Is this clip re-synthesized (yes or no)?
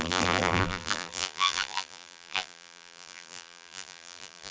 yes